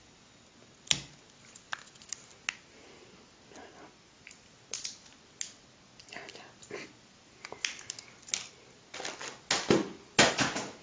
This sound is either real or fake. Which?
real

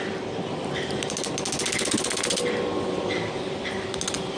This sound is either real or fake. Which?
real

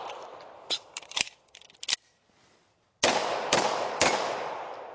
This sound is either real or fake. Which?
real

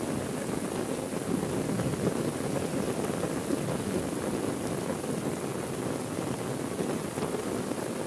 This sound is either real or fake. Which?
real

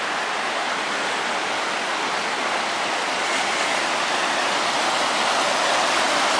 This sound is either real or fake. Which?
real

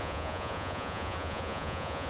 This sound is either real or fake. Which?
fake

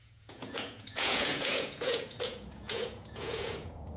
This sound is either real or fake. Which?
fake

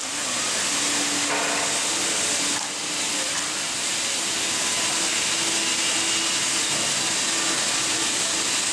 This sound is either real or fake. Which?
real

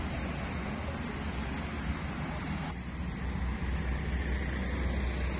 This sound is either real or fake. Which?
real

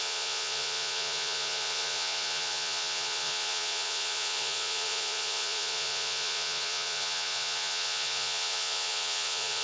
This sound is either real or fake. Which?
fake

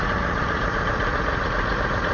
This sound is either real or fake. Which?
fake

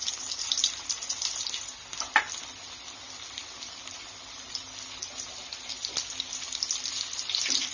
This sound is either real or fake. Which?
real